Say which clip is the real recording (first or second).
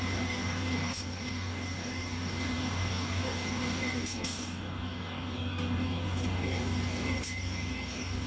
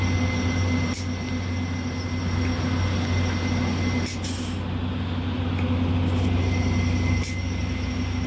second